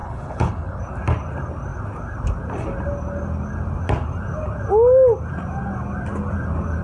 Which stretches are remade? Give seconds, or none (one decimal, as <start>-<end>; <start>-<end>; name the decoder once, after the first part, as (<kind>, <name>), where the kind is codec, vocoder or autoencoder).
0.0-0.8 (codec, HILCodec)